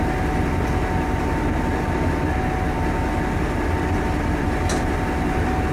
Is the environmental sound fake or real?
real